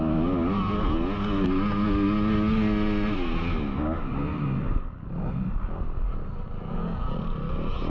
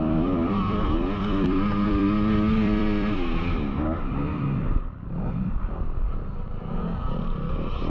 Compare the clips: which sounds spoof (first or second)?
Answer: second